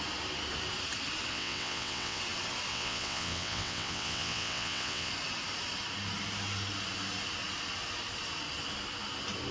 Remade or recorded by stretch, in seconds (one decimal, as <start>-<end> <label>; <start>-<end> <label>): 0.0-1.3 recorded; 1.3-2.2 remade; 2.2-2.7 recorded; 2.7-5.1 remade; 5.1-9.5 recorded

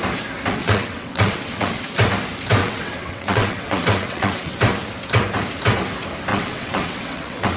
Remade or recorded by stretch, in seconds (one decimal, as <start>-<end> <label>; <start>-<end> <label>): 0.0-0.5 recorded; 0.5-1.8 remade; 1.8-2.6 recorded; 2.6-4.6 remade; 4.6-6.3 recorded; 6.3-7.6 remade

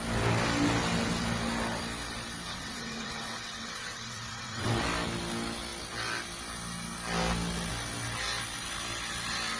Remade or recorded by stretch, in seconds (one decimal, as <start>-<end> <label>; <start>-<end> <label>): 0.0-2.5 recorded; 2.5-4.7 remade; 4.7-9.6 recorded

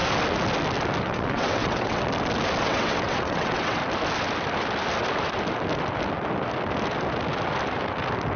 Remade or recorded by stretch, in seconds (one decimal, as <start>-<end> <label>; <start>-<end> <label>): 0.0-1.0 recorded; 1.0-2.0 remade; 2.0-2.6 recorded; 2.6-3.8 remade; 3.8-8.4 recorded

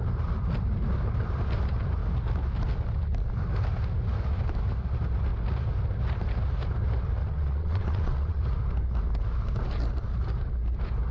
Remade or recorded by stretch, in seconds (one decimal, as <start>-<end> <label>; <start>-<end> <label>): 0.0-7.2 recorded; 7.2-8.4 remade; 8.4-11.1 recorded

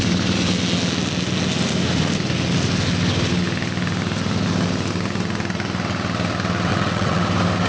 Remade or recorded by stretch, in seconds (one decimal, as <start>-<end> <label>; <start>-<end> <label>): 0.0-6.7 recorded; 6.7-7.2 remade; 7.2-7.7 recorded